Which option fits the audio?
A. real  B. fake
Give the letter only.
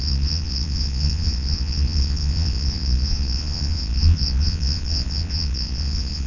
B